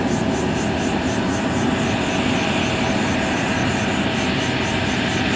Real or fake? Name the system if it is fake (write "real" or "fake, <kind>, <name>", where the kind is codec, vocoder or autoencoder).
real